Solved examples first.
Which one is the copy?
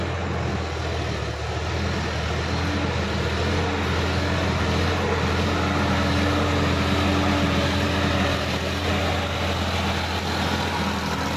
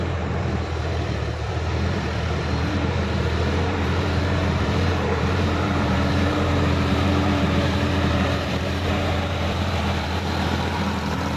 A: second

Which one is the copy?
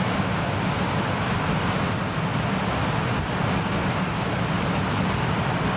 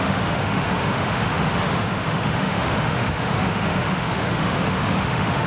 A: second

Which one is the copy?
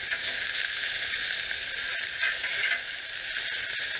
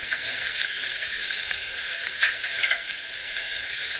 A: second